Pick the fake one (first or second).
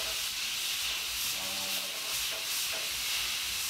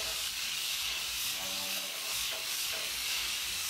second